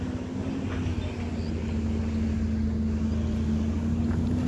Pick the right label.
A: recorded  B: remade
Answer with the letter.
A